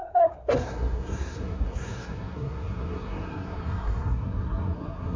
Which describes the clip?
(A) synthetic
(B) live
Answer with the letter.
A